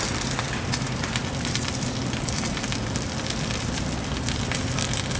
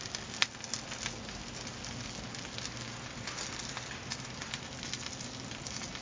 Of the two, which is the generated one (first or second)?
first